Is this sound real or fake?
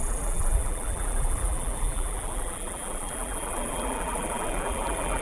fake